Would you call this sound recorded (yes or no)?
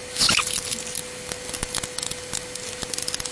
yes